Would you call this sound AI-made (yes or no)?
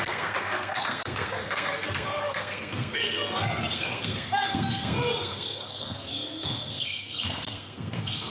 yes